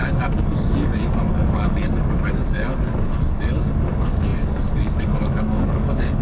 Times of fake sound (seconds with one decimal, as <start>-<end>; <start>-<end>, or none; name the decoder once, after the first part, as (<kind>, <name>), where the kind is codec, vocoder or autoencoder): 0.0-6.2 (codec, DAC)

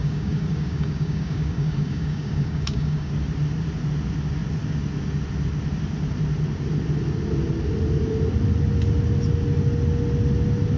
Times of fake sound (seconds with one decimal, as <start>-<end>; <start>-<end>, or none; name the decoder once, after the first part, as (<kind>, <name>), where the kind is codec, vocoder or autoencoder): 0.0-3.1 (codec, DAC)

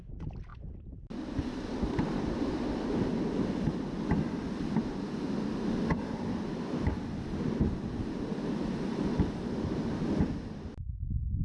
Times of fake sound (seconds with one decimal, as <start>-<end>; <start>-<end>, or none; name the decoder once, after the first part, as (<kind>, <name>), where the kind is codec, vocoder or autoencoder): none

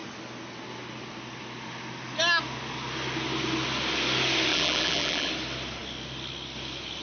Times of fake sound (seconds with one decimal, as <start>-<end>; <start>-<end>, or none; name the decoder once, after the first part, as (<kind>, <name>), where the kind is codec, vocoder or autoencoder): 4.5-5.3 (vocoder, BigVGAN v2)